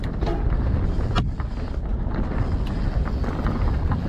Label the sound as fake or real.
real